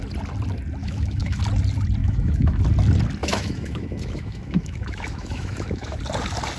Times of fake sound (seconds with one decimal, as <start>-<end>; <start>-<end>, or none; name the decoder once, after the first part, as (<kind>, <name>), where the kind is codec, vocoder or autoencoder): 0.8-1.4 (autoencoder, DAC-VAE); 2.0-2.6; 3.2-6.0